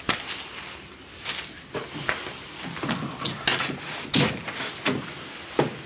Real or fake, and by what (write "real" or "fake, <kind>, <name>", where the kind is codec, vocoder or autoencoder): real